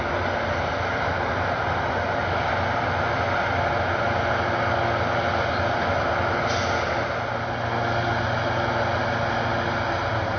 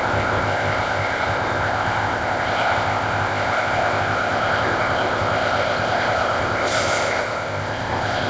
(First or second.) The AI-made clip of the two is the second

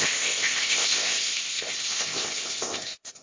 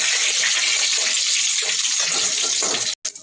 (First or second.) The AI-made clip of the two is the first